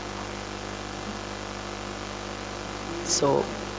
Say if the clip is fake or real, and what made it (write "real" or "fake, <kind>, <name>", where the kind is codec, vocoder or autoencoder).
real